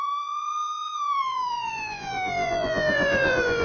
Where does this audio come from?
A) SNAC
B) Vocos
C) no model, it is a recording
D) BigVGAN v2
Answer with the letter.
B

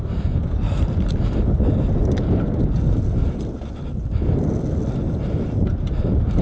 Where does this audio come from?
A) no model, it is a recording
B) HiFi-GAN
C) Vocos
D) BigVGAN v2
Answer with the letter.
A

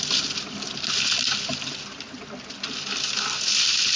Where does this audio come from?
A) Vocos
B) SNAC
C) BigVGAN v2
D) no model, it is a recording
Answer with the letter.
D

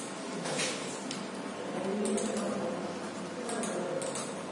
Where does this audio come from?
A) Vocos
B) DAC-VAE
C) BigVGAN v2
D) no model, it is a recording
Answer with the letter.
D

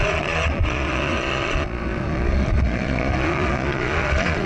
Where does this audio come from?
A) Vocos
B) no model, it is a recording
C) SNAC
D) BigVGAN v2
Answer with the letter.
A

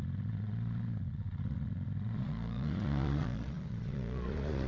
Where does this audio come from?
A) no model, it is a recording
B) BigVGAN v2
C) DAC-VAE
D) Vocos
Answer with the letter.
D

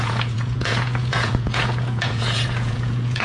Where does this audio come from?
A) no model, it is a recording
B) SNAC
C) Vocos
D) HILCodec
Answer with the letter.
C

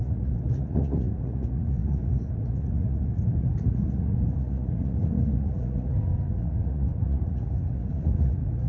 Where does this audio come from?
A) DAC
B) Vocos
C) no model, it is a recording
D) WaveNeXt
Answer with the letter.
B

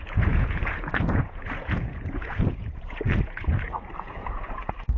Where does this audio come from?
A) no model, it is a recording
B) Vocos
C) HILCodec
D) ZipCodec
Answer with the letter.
B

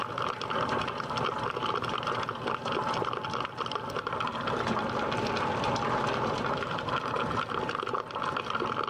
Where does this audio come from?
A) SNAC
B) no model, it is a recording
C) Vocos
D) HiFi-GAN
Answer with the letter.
B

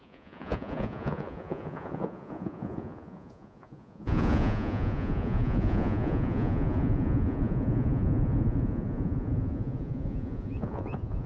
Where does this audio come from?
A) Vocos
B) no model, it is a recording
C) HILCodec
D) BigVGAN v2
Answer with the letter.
A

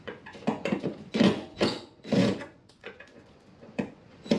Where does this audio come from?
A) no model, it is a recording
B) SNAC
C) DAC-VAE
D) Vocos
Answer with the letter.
D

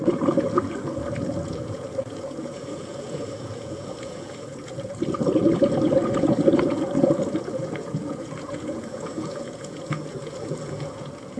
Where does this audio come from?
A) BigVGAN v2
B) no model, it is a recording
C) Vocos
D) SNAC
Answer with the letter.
C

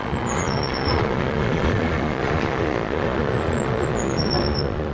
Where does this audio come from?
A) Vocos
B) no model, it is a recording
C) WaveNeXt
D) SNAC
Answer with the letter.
A